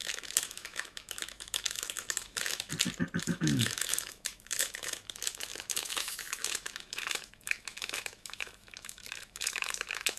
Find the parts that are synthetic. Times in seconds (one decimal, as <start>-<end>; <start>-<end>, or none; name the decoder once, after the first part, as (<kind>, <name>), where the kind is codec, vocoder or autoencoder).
0.0-2.7 (autoencoder, DAC-VAE); 3.2-10.2